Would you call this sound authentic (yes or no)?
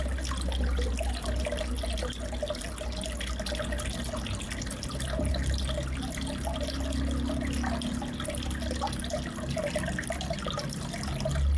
yes